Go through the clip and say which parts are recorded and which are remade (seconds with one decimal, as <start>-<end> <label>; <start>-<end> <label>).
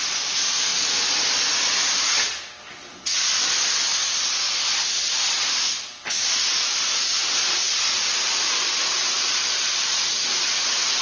0.0-11.0 recorded